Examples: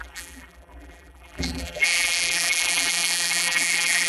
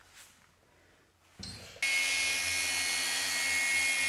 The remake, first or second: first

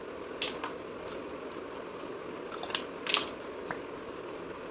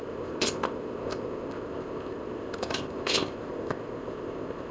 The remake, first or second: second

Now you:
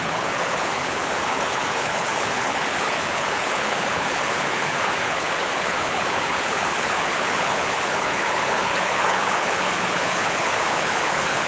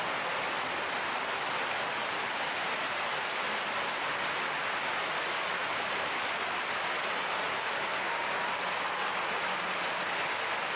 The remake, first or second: first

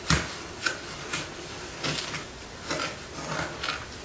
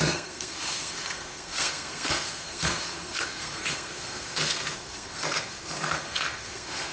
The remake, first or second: second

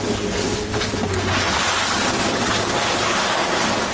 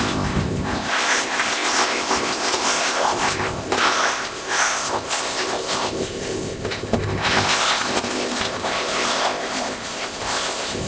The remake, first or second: second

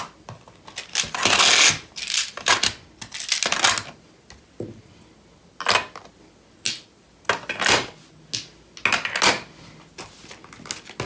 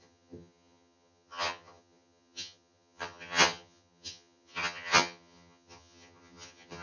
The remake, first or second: second